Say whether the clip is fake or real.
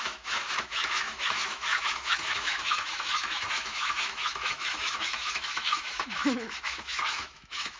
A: fake